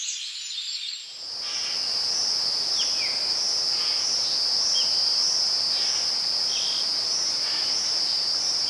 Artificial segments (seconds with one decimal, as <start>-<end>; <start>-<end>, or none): none